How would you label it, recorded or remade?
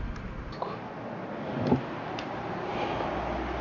recorded